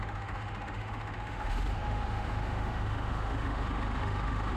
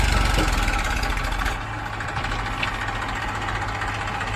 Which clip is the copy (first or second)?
first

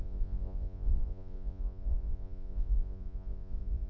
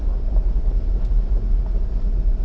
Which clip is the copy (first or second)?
first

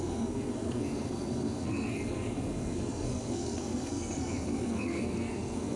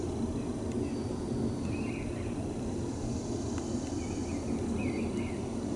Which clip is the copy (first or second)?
first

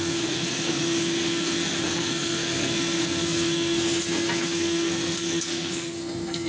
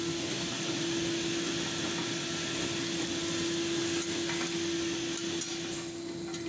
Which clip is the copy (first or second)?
first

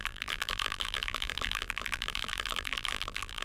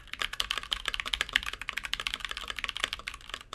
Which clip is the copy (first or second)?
first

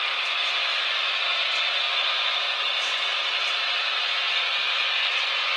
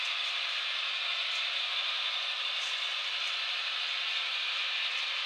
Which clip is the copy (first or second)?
second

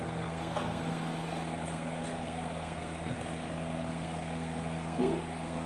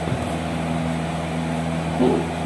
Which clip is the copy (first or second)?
first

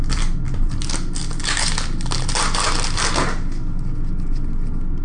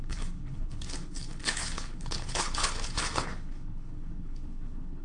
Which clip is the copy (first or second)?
second